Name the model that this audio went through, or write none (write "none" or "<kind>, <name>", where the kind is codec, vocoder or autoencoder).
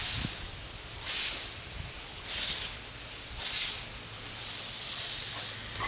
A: vocoder, BigVGAN v2